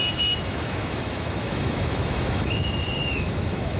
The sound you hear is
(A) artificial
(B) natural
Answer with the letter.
A